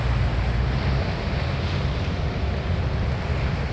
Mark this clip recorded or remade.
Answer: recorded